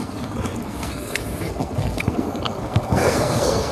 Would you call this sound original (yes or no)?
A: no